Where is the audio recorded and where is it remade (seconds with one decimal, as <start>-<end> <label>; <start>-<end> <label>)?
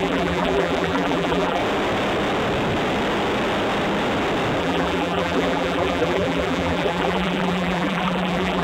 0.0-1.6 remade; 1.6-4.6 recorded; 4.6-8.6 remade